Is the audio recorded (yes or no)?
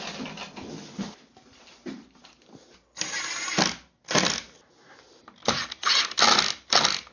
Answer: yes